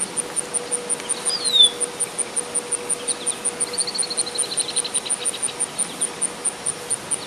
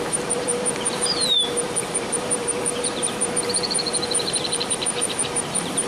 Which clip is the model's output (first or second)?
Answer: second